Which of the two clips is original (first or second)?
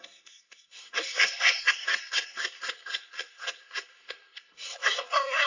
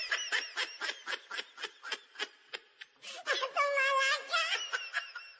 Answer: second